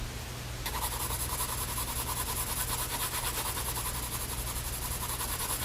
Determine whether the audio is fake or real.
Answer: real